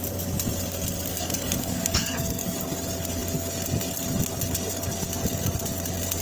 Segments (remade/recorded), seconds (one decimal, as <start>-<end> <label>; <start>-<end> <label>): 0.0-1.1 recorded; 1.1-2.5 remade; 2.5-6.2 recorded